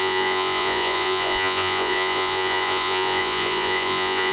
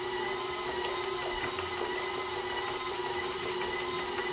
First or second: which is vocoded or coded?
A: first